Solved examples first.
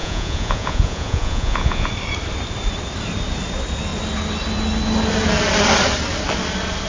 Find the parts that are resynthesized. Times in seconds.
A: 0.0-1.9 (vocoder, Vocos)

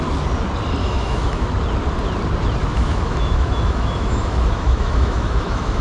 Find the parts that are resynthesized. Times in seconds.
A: 0.8-1.5 (autoencoder, DAC-VAE); 2.6-5.8

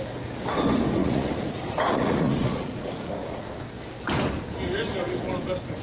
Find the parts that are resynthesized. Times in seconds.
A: 1.0-3.6 (vocoder, Vocos)

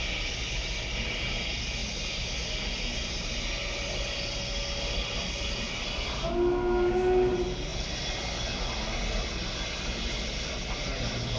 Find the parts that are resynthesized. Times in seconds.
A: none

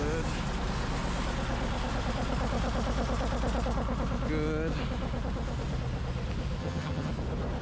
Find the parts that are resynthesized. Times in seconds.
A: 6.6-7.1 (vocoder, HiFi-GAN)

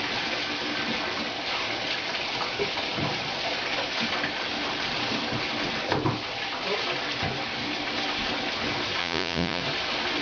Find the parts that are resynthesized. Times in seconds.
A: 9.0-9.6 (vocoder, Vocos)

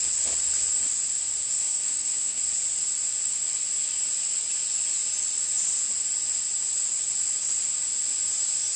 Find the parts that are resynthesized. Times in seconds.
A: 1.5-2.4 (codec, SNAC)